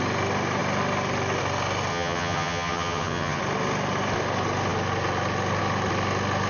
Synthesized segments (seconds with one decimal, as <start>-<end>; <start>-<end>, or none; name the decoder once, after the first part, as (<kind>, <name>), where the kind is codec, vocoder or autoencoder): 1.9-3.4 (vocoder, HiFi-GAN)